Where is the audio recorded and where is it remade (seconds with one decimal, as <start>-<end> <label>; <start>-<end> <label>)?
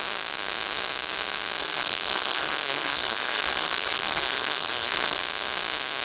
0.0-1.6 recorded; 1.6-5.2 remade; 5.2-6.0 recorded